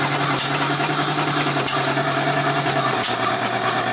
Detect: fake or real fake